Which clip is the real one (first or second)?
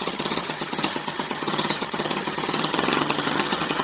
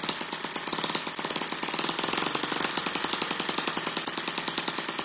second